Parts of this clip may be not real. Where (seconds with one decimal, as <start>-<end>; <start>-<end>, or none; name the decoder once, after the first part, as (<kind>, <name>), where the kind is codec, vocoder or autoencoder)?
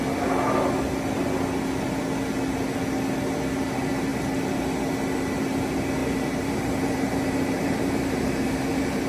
6.0-9.1 (vocoder, BigVGAN v2)